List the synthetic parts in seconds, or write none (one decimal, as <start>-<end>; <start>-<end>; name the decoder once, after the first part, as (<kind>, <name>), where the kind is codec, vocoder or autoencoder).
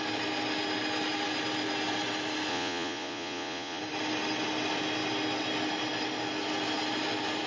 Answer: 2.5-3.8 (vocoder, Vocos)